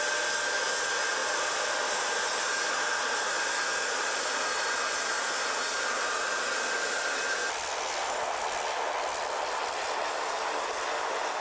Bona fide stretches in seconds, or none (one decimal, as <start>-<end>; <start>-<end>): 0.0-11.4